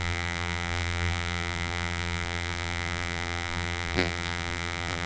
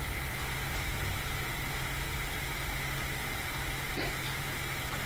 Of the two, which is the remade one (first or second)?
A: first